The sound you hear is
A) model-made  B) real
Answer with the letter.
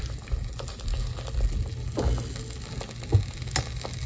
B